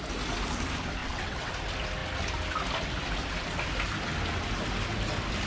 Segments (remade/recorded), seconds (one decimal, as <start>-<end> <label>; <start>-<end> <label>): 0.0-1.0 recorded; 1.0-1.5 remade; 1.5-5.5 recorded